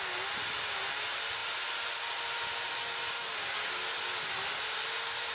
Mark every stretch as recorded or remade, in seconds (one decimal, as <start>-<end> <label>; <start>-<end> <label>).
0.0-5.3 recorded